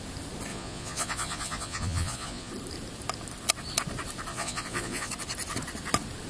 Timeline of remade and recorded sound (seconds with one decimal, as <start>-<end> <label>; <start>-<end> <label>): 0.0-0.5 recorded; 0.5-2.5 remade; 2.5-4.3 recorded; 4.3-5.1 remade; 5.1-6.3 recorded